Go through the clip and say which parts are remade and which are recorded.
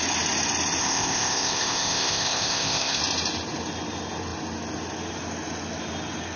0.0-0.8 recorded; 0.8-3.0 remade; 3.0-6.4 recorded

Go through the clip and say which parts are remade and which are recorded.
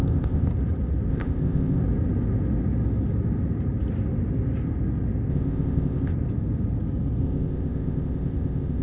0.0-0.5 remade; 0.5-1.1 recorded; 1.1-1.8 remade; 1.8-5.3 recorded; 5.3-6.1 remade; 6.1-7.2 recorded; 7.2-8.8 remade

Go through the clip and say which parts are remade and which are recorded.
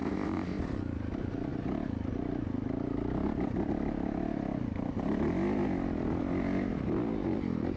0.0-0.6 remade; 0.6-7.8 recorded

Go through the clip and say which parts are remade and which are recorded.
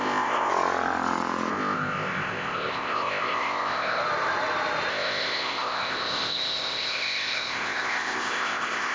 0.0-0.5 remade; 0.5-1.5 recorded; 1.5-4.0 remade; 4.0-4.9 recorded; 4.9-8.9 remade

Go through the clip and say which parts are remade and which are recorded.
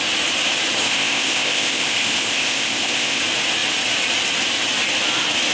0.0-0.8 recorded; 0.8-3.2 remade; 3.2-5.5 recorded